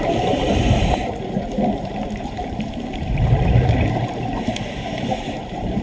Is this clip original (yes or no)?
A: no